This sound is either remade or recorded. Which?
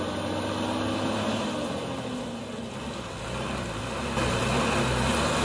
recorded